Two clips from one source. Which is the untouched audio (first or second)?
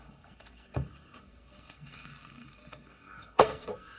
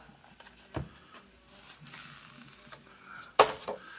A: second